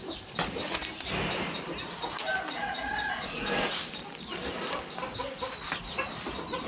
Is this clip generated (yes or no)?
no